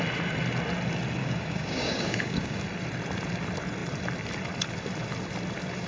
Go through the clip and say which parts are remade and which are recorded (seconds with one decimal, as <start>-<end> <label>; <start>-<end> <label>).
0.0-1.2 recorded; 1.2-2.6 remade; 2.6-5.9 recorded